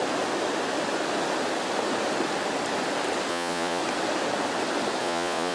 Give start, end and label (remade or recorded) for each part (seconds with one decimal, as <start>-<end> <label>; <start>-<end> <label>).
0.0-3.3 recorded; 3.3-3.8 remade; 3.8-5.0 recorded; 5.0-5.5 remade